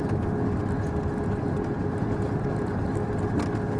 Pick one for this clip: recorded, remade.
recorded